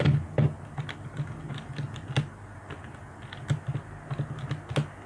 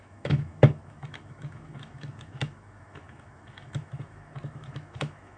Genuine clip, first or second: first